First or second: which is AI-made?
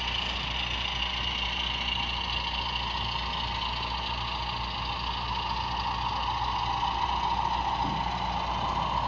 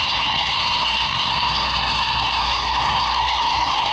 second